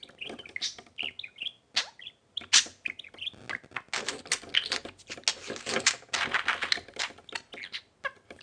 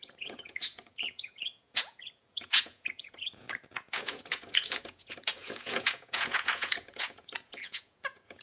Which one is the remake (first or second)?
second